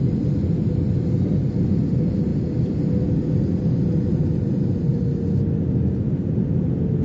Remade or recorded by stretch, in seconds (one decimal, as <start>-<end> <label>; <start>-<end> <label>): 0.0-7.0 recorded